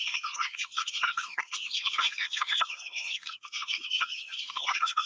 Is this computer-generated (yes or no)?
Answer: yes